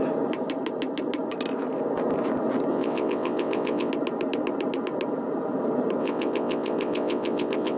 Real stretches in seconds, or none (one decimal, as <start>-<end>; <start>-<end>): 0.0-2.7; 3.9-6.0